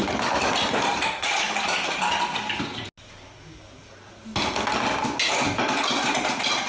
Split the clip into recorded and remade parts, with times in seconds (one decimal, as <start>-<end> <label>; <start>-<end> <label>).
0.0-6.7 recorded

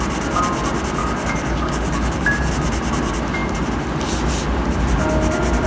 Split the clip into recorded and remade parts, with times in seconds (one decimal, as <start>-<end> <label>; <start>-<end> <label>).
0.0-1.0 recorded; 1.0-2.5 remade; 2.5-5.7 recorded

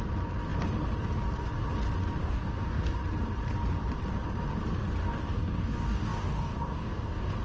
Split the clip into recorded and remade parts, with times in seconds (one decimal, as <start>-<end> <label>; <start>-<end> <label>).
0.0-2.2 recorded; 2.2-3.0 remade; 3.0-5.0 recorded; 5.0-7.4 remade

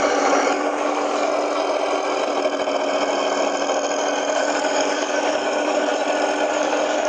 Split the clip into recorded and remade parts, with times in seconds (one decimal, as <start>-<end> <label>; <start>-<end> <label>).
0.0-1.3 remade; 1.3-4.4 recorded; 4.4-5.9 remade; 5.9-6.5 recorded; 6.5-7.1 remade